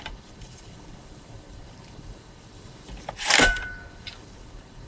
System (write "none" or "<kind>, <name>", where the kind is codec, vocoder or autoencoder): vocoder, BigVGAN v2